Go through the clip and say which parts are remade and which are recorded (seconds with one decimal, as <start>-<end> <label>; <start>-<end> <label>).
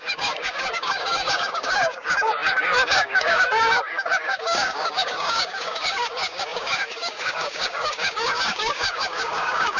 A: 0.0-9.8 remade